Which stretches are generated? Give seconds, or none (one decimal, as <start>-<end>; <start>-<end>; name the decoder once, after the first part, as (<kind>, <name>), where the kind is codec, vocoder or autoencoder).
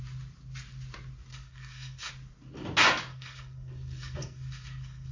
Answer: 1.3-2.1 (codec, SNAC); 3.1-5.1